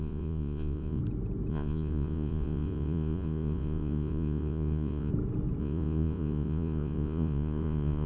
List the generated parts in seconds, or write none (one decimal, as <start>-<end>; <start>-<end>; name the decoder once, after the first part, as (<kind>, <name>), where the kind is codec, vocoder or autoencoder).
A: 0.0-1.0 (vocoder, Vocos); 1.5-5.1; 5.6-8.1